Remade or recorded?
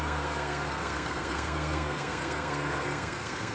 remade